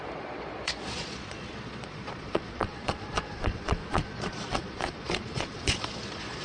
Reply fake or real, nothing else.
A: fake